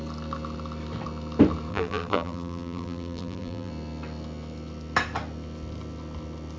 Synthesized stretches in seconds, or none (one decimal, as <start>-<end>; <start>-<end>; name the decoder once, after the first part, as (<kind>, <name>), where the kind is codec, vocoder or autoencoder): 1.7-3.7 (vocoder, BigVGAN v2)